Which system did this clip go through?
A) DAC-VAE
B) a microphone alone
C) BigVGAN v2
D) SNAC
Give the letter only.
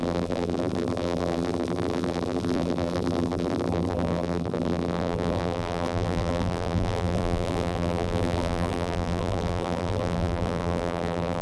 C